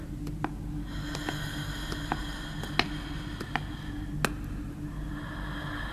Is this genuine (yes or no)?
yes